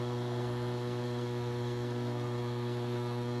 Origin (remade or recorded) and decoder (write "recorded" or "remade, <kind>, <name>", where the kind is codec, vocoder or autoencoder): remade, codec, SNAC